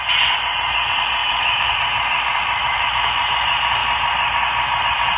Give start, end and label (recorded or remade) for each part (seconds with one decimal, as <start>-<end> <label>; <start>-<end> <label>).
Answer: 0.0-1.2 recorded; 1.2-1.7 remade; 1.7-2.6 recorded; 2.6-3.2 remade; 3.2-5.2 recorded